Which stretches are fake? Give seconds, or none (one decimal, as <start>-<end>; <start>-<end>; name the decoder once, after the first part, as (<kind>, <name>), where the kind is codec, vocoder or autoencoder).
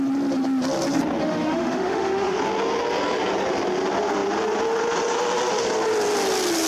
1.2-2.4 (autoencoder, DAC-VAE)